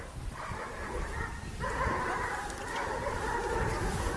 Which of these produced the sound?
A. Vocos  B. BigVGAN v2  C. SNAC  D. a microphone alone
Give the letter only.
B